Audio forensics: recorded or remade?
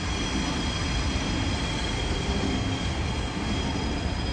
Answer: recorded